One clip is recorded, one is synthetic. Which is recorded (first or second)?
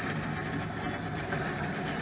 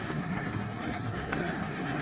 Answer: first